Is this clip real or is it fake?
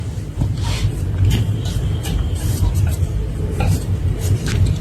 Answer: fake